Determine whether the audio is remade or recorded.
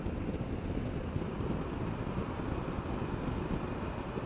recorded